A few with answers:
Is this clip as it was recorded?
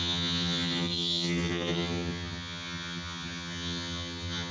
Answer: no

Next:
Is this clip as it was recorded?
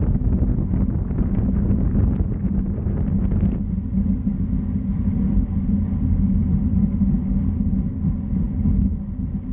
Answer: yes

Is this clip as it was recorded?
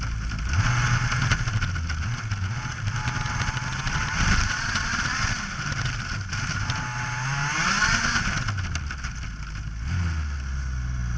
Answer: yes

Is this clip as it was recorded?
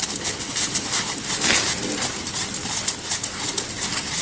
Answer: yes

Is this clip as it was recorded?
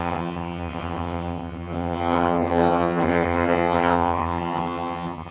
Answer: no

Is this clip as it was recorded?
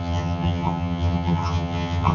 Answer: no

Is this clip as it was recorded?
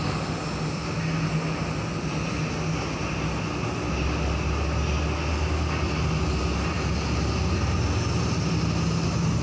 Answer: yes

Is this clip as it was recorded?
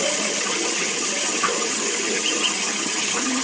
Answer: no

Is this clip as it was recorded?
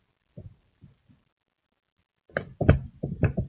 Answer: yes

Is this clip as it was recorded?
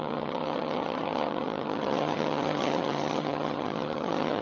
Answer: no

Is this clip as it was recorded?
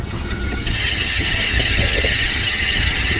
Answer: no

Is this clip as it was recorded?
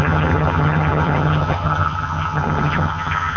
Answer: no